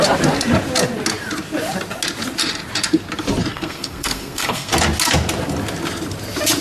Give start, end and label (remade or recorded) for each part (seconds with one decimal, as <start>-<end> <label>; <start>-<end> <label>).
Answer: 0.0-3.5 recorded; 3.5-4.7 remade; 4.7-6.6 recorded